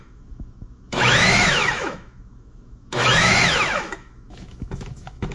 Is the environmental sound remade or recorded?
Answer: remade